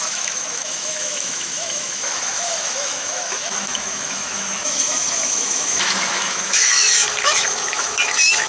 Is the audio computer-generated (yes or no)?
yes